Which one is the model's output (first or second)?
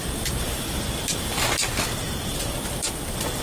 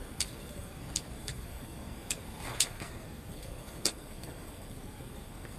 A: second